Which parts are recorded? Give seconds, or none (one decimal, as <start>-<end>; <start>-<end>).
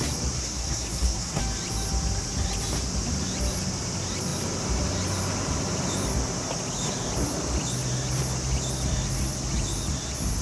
0.0-0.4; 1.4-10.4